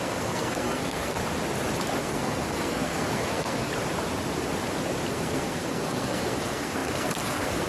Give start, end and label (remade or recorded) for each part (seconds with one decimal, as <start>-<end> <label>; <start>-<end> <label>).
0.0-1.2 remade; 1.2-2.0 recorded; 2.0-3.7 remade; 3.7-5.1 recorded; 5.1-7.7 remade